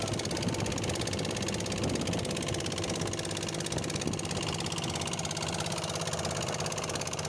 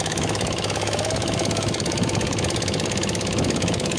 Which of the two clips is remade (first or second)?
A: second